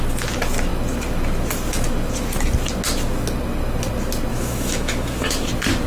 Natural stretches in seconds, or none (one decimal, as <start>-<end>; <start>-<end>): 0.0-4.3; 5.5-5.9